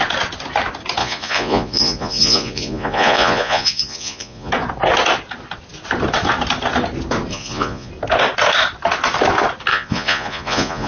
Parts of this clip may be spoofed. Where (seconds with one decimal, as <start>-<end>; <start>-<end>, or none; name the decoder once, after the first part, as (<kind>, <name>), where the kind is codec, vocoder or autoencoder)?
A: 1.0-4.5 (vocoder, Vocos); 7.3-7.9; 9.7-10.9